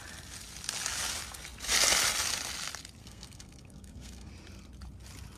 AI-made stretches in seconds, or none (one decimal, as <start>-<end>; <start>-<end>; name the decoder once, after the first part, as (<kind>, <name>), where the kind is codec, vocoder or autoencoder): 3.0-4.3 (codec, SNAC)